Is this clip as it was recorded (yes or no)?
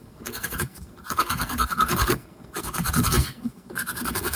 no